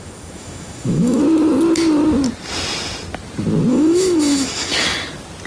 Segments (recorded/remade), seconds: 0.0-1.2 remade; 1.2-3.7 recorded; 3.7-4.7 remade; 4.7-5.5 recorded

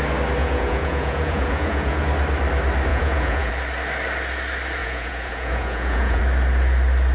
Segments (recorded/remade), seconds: 0.0-0.4 recorded; 0.4-2.0 remade; 2.0-2.9 recorded; 2.9-3.5 remade; 3.5-4.8 recorded; 4.8-6.2 remade; 6.2-7.1 recorded

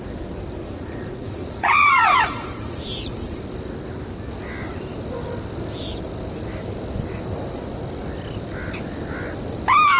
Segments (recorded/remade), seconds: 0.0-0.6 recorded; 0.6-3.4 remade; 3.4-10.0 recorded

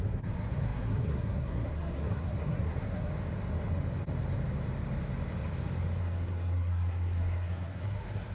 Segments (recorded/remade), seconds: 0.0-3.1 remade; 3.1-6.0 recorded; 6.0-8.3 remade

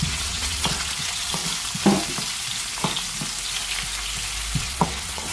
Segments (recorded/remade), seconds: 0.0-1.4 remade; 1.4-4.6 recorded; 4.6-5.3 remade

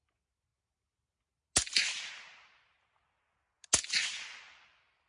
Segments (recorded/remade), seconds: 0.0-5.1 recorded